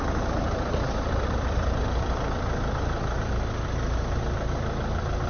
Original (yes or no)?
yes